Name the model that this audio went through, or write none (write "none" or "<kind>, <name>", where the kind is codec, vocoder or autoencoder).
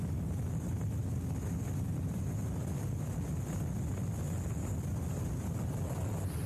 none